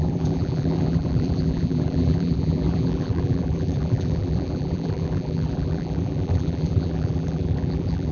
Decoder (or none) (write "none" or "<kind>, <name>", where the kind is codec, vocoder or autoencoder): vocoder, BigVGAN v2